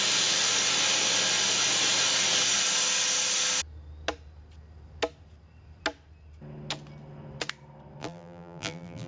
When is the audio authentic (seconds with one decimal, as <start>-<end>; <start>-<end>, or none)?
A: 0.0-8.0